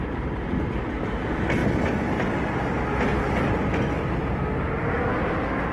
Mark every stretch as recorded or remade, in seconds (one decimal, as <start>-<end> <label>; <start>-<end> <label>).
0.0-5.7 recorded